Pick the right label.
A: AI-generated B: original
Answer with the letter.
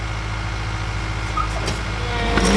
B